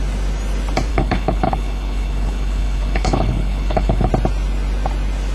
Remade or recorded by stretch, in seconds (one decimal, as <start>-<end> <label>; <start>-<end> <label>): 0.0-0.9 recorded; 0.9-4.1 remade; 4.1-5.3 recorded